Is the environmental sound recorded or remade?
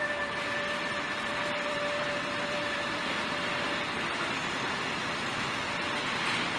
remade